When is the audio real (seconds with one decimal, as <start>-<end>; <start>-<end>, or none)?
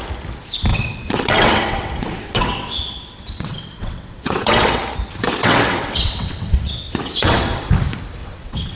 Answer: 0.0-0.7; 4.8-5.4; 7.7-8.2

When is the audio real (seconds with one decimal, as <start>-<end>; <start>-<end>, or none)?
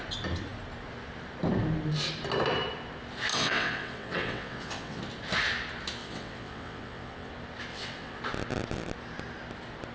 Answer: 0.0-3.3; 5.0-6.0; 7.3-7.7; 8.2-9.9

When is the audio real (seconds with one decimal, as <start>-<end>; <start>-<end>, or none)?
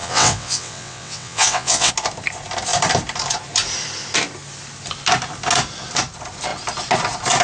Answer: 1.9-7.4